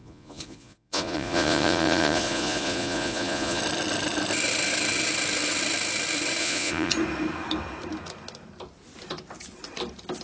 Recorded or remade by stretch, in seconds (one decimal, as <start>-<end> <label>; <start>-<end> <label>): 0.0-3.6 remade; 3.6-6.4 recorded; 6.4-6.9 remade; 6.9-10.2 recorded